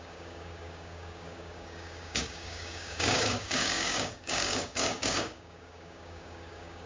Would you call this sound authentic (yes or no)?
no